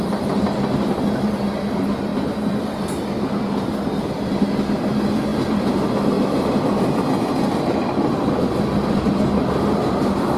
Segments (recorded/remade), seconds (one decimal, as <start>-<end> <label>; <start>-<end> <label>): 0.0-10.4 recorded